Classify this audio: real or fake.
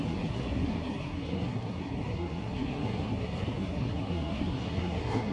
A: fake